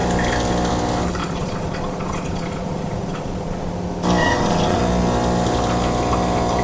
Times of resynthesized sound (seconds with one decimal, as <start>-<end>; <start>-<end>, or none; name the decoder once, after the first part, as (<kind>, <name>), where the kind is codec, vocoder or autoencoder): 1.2-3.7 (vocoder, Vocos); 4.2-4.8